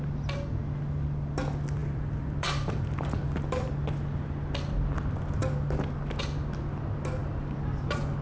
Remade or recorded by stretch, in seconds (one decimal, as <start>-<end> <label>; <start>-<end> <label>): 0.0-1.8 recorded; 1.8-3.7 remade; 3.7-7.2 recorded; 7.2-8.2 remade